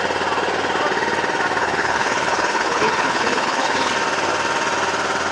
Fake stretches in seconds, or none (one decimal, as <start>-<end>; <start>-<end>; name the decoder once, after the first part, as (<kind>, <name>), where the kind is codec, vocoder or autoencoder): 1.6-3.9 (codec, HILCodec)